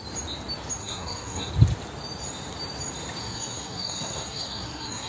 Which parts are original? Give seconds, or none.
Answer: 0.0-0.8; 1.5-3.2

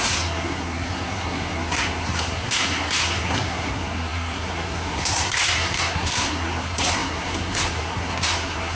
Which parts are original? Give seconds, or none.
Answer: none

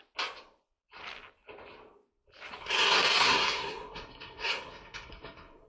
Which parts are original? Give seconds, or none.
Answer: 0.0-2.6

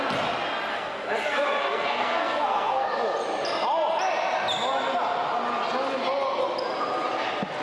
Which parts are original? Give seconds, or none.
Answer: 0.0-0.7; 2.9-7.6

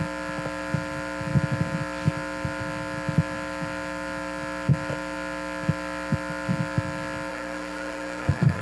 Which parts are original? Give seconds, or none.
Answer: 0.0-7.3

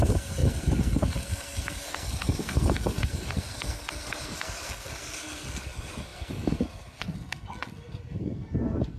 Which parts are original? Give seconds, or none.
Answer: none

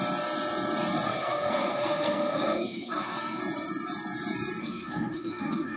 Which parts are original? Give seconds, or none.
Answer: 0.0-1.1; 3.4-4.6

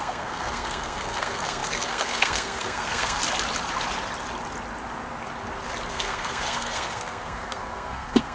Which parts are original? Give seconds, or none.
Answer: 3.2-5.9